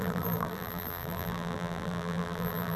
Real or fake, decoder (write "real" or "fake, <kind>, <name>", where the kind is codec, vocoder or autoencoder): fake, vocoder, BigVGAN v2